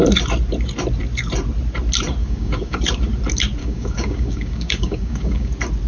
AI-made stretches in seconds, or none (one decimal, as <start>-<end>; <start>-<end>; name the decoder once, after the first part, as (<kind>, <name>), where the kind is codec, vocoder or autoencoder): 2.2-2.8 (codec, DAC); 3.6-5.5